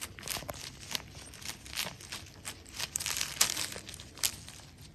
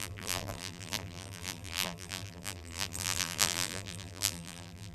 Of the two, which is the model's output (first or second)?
second